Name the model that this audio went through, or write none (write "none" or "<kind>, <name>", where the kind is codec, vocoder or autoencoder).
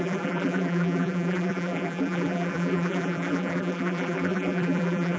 vocoder, BigVGAN v2